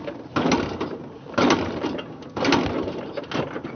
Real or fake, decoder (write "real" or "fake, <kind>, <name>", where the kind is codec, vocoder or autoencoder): real